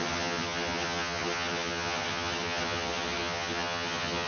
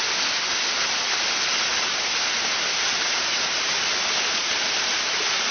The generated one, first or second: first